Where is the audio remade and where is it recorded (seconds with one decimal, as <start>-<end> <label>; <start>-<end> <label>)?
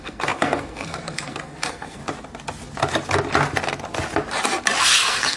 0.0-2.0 remade; 2.0-4.8 recorded; 4.8-5.4 remade